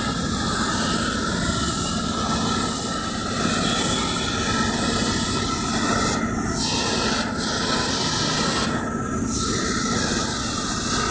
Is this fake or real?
real